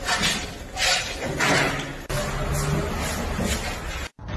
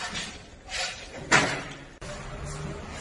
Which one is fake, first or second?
second